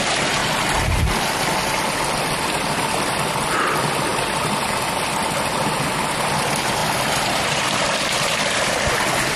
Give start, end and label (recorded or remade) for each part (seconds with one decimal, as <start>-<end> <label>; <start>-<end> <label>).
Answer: 0.0-4.1 recorded; 4.1-5.0 remade; 5.0-6.8 recorded; 6.8-8.9 remade; 8.9-9.4 recorded